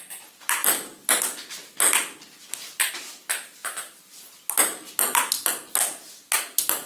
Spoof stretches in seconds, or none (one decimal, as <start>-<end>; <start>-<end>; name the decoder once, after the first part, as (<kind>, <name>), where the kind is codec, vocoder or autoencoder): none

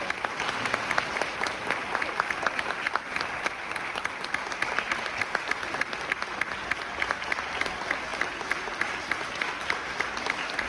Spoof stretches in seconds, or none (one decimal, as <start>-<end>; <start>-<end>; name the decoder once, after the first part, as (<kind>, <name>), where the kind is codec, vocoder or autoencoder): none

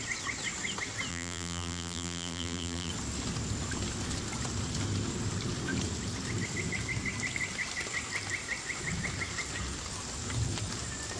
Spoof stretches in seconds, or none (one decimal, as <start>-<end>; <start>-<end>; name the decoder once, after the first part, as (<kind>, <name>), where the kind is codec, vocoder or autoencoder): 1.1-2.9 (vocoder, BigVGAN v2)

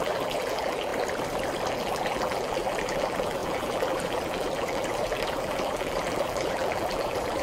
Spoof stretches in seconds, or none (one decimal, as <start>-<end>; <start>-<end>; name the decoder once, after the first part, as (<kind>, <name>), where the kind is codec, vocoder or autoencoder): 0.0-0.9 (vocoder, BigVGAN v2); 1.7-7.4

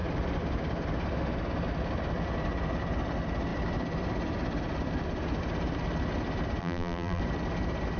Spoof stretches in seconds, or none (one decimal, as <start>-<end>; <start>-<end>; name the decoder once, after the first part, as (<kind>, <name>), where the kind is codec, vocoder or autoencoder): 6.6-7.2 (vocoder, BigVGAN v2)

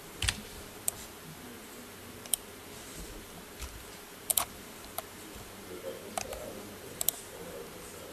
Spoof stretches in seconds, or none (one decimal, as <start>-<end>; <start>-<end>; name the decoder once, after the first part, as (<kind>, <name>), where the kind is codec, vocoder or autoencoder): 0.0-8.1 (vocoder, BigVGAN v2)

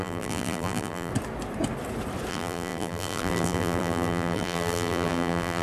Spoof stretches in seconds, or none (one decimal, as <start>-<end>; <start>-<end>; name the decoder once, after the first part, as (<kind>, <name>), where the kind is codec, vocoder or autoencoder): 0.0-1.1 (vocoder, BigVGAN v2); 2.3-5.6

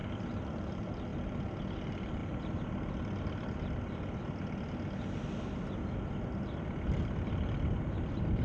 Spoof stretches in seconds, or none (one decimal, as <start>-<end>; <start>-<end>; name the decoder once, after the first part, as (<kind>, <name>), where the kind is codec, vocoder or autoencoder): 0.0-2.2 (vocoder, BigVGAN v2); 6.9-8.4